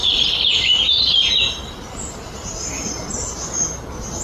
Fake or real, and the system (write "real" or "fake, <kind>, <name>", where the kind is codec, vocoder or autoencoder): real